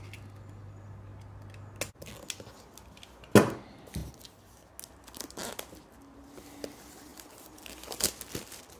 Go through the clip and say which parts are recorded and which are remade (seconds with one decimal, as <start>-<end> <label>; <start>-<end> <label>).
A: 0.0-8.8 recorded